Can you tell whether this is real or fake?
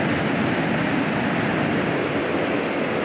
real